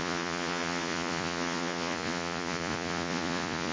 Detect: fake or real fake